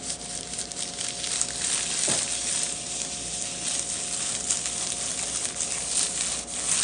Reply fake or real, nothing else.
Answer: real